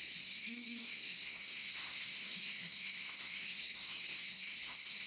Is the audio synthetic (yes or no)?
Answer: yes